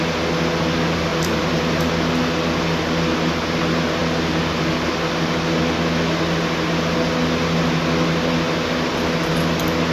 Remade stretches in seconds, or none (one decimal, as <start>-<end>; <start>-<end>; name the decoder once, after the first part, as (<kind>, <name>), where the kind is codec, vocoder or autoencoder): 1.1-1.9 (vocoder, BigVGAN v2)